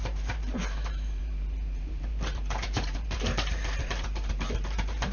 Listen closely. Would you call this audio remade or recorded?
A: remade